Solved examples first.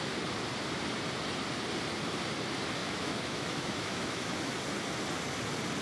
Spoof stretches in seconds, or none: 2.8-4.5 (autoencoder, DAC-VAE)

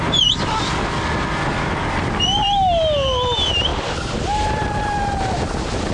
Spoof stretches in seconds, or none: none

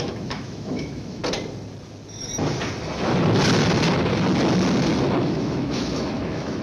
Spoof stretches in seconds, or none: 0.0-1.2 (autoencoder, DAC-VAE); 5.2-6.6

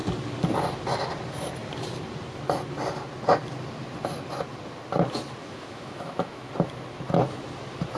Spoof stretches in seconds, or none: 5.4-6.5 (autoencoder, DAC-VAE)

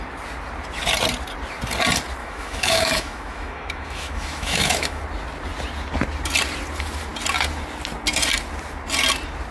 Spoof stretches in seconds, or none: 2.2-5.0 (autoencoder, DAC-VAE)